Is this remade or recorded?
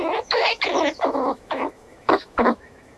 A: remade